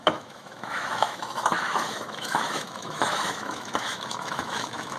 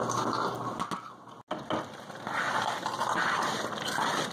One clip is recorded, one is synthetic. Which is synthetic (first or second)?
first